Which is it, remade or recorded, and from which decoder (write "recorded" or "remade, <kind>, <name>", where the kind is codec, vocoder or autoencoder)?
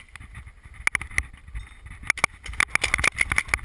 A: recorded